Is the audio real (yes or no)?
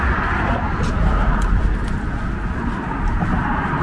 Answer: yes